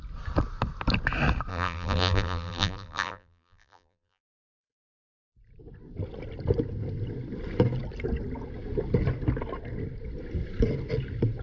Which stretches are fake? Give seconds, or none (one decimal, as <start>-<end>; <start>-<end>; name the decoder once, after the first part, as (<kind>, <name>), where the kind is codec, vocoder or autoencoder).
1.5-4.6 (vocoder, BigVGAN v2)